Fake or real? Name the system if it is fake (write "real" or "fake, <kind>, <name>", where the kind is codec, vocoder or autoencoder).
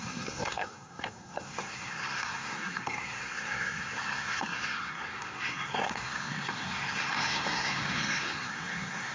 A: fake, codec, SNAC